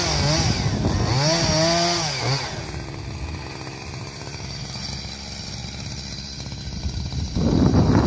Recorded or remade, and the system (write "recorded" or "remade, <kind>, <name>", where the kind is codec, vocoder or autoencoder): recorded